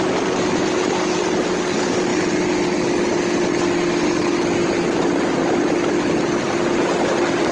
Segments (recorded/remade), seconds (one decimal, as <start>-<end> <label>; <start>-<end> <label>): 0.0-7.5 recorded